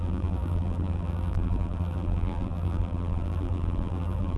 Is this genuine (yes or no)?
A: no